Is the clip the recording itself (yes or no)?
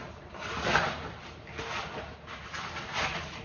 yes